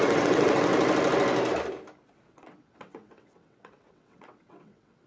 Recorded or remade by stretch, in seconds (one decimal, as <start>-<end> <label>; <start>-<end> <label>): 0.0-0.7 remade; 0.7-2.1 recorded; 2.1-5.1 remade